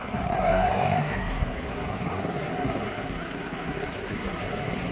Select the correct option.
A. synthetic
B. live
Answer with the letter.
A